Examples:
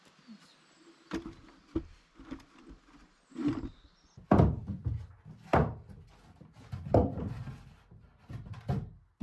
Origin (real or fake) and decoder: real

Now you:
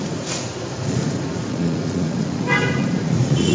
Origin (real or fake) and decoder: fake, vocoder, Vocos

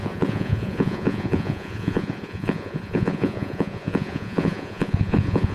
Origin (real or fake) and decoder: fake, vocoder, Vocos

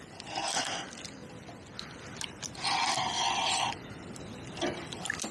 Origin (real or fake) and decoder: real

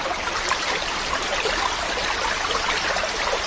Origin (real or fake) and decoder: real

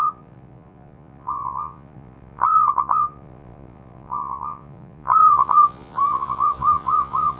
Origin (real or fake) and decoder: fake, vocoder, Vocos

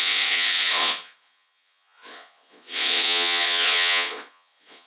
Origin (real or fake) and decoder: fake, vocoder, Vocos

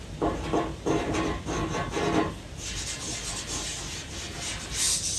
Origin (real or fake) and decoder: real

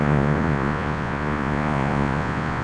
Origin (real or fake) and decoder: fake, vocoder, Vocos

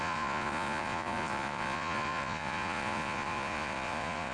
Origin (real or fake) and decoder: fake, vocoder, Vocos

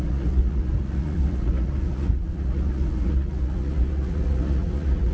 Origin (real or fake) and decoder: fake, vocoder, Vocos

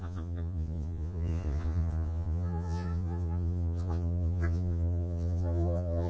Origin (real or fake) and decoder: fake, vocoder, Vocos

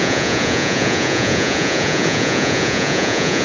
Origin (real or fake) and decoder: fake, vocoder, Vocos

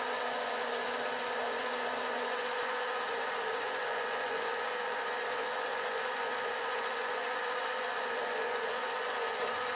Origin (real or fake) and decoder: fake, vocoder, Vocos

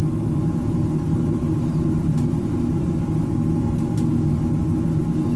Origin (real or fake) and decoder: real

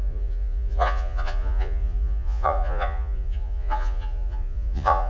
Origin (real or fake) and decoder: fake, vocoder, Vocos